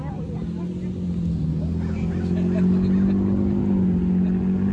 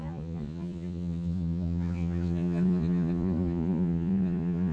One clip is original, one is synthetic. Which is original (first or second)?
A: first